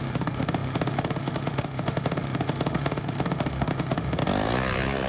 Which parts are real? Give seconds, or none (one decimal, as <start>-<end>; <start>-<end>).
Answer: 4.2-5.1